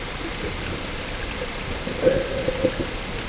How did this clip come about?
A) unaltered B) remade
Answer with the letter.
A